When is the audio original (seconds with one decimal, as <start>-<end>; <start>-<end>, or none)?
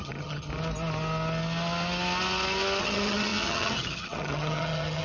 0.5-2.8